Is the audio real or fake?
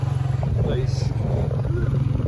real